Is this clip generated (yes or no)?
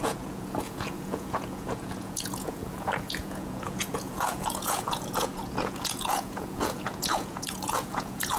yes